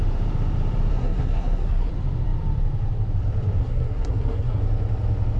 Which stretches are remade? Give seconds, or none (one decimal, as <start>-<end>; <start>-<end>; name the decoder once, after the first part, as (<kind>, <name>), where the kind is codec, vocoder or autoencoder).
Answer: 0.9-1.9 (codec, SNAC); 3.6-4.6